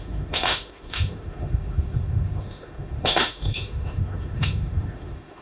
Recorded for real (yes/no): no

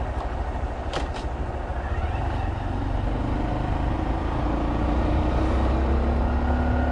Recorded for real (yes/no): yes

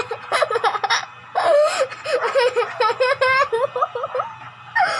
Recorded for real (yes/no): yes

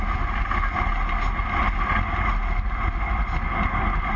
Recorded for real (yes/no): yes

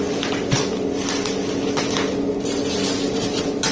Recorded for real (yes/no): yes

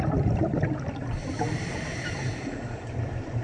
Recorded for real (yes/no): yes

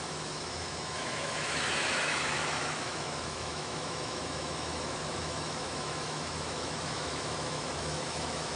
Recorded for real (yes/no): no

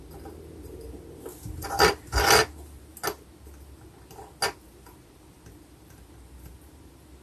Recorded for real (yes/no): yes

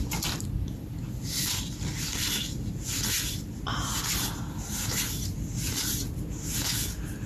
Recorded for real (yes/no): yes